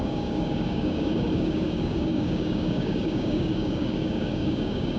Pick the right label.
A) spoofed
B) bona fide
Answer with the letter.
A